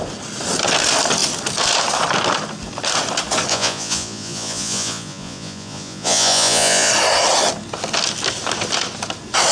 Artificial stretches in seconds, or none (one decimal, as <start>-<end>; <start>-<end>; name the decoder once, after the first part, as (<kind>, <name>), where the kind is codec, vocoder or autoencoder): 3.5-6.9 (vocoder, Vocos)

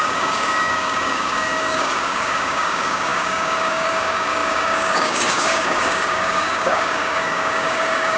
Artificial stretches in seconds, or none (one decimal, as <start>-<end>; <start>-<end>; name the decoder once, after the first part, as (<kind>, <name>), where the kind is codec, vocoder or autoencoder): 0.0-8.2 (codec, DAC)

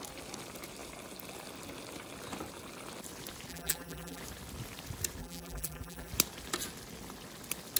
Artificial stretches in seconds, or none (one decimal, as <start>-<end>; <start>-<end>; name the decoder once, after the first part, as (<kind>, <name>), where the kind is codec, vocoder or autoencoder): 3.5-4.2 (vocoder, BigVGAN v2); 5.2-6.1

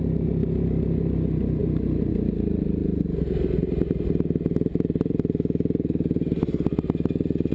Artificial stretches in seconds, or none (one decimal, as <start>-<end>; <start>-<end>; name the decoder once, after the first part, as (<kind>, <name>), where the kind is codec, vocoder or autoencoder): none